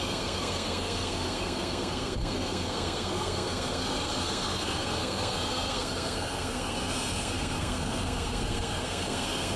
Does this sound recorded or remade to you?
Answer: remade